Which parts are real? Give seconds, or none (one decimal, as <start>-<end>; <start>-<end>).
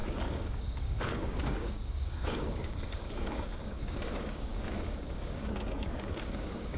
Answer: none